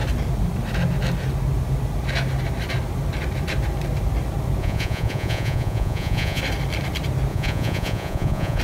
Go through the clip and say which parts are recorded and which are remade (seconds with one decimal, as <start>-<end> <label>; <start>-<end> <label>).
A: 0.0-4.6 recorded; 4.6-6.4 remade; 6.4-7.3 recorded; 7.3-8.6 remade